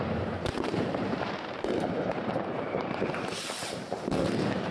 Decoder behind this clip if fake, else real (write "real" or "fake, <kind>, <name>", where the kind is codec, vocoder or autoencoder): fake, vocoder, BigVGAN v2